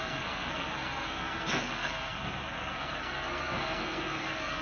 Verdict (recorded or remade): remade